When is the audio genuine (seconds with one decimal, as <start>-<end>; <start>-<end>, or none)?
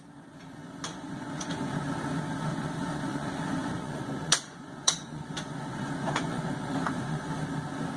0.0-0.9; 1.8-2.5; 7.3-8.0